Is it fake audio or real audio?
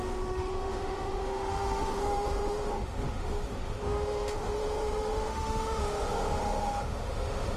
fake